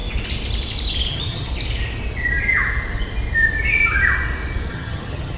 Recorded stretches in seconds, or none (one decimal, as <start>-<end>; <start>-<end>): 0.0-1.1; 1.5-4.7